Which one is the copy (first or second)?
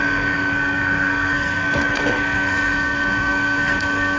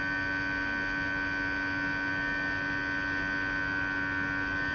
first